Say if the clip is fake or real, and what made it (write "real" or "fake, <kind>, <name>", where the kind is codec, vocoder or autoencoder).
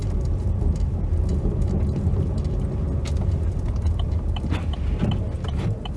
real